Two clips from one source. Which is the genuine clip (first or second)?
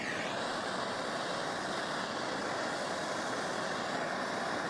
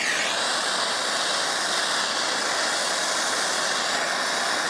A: second